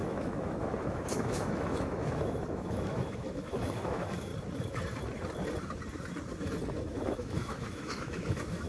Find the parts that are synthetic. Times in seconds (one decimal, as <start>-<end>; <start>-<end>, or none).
0.0-4.3; 6.9-8.7

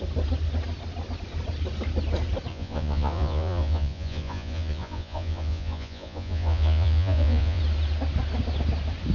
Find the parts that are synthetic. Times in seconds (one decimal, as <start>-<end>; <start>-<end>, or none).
2.5-7.6

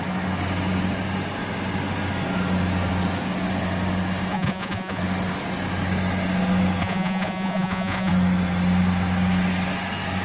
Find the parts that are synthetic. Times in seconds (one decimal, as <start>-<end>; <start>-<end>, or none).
4.3-5.0; 6.8-8.1

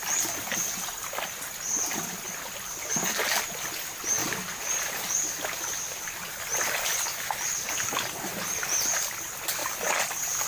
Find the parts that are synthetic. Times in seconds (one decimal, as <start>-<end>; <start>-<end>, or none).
none

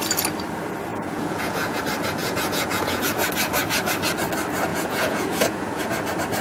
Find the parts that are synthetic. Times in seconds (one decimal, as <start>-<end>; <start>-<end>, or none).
0.9-1.8; 2.2-3.1; 4.7-5.8

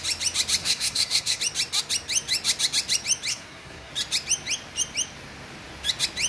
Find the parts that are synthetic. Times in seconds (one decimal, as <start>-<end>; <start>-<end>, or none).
0.6-1.4; 3.3-3.9